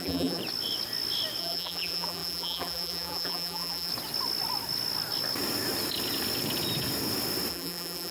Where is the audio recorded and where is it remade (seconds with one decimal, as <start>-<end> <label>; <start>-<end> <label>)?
0.0-0.4 remade; 0.4-1.4 recorded; 1.4-3.9 remade; 3.9-7.5 recorded; 7.5-8.1 remade